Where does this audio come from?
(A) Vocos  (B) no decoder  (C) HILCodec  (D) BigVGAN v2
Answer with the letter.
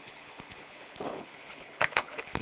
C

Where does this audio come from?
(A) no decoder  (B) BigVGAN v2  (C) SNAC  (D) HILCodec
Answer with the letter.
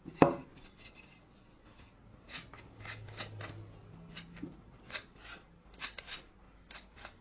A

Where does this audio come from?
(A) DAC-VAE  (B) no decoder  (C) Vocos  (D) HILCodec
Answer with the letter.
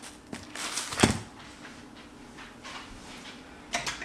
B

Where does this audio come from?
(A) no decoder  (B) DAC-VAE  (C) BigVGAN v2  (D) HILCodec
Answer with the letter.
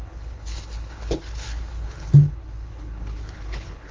D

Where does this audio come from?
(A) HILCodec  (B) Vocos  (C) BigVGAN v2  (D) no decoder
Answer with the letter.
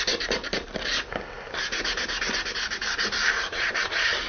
D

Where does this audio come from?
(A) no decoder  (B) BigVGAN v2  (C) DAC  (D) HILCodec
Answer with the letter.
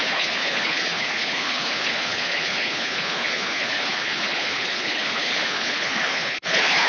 D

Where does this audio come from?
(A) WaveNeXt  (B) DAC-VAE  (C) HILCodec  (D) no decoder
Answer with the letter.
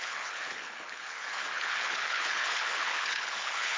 C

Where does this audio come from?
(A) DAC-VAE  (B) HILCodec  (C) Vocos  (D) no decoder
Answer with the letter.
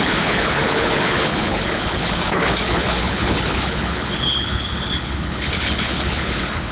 B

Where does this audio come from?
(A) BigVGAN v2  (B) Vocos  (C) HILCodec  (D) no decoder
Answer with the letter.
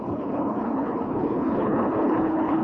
C